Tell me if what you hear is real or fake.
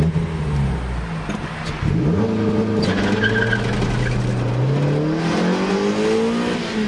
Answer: real